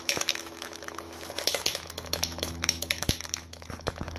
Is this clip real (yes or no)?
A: no